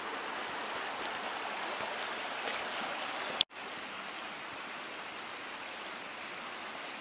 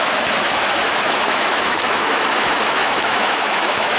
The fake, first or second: second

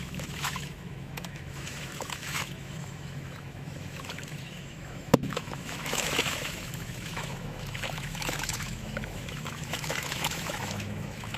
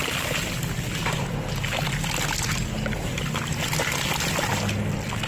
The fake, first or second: first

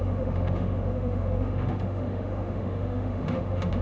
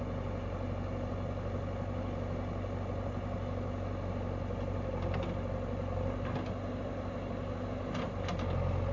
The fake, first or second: first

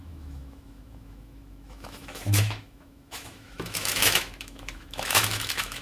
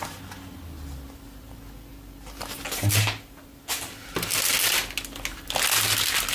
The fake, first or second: first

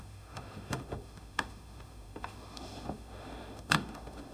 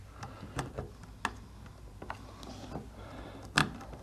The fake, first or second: first